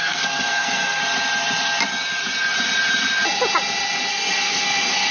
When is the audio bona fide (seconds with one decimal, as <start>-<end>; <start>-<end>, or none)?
1.0-4.1

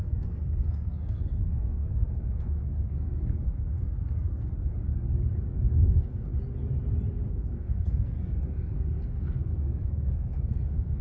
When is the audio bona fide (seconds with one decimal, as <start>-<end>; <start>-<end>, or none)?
4.5-5.7; 6.3-7.3

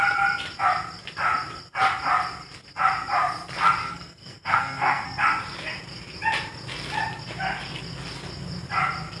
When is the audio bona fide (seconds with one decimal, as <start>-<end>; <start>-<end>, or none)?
0.0-3.8; 5.2-9.2

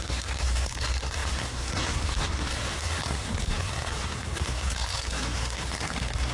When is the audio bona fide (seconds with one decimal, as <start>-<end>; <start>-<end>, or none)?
none

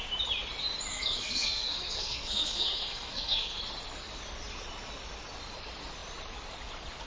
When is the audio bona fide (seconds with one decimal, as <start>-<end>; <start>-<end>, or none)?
0.0-0.9; 3.6-7.1